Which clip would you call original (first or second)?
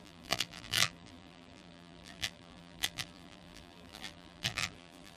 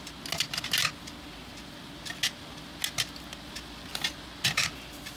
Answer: second